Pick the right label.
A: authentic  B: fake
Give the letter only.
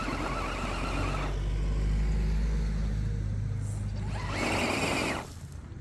A